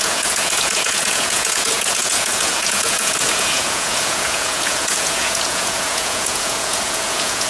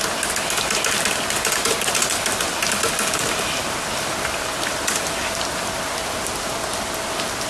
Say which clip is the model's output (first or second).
first